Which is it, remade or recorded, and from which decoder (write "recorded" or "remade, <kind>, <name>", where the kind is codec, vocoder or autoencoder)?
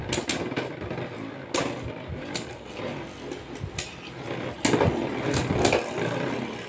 recorded